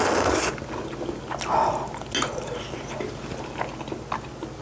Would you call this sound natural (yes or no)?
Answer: yes